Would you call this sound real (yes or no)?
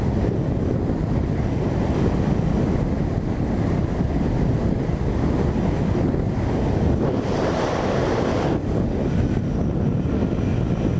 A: yes